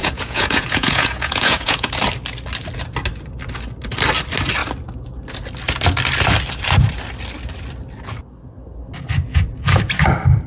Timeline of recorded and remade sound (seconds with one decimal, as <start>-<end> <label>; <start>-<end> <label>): 0.0-1.9 remade; 1.9-10.5 recorded